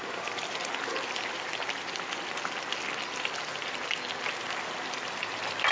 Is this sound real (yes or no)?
yes